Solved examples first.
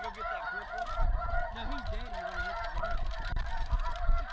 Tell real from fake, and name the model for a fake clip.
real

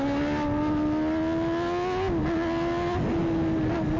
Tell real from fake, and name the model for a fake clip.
real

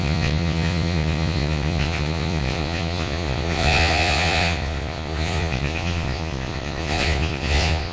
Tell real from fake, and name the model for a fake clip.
fake, vocoder, Vocos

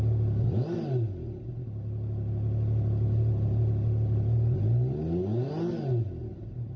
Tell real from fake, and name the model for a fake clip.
real